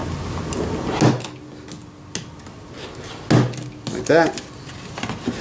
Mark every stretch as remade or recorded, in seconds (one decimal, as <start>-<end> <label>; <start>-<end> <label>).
0.0-5.4 recorded